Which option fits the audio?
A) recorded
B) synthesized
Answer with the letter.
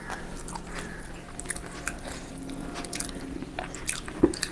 A